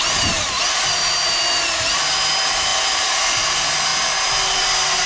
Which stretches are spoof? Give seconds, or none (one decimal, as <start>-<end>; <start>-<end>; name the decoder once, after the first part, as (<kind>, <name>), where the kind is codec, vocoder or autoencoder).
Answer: none